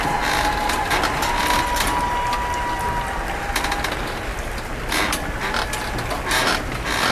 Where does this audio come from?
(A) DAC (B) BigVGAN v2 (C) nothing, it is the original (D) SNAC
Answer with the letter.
C